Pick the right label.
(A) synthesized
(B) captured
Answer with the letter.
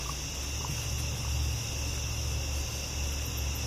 B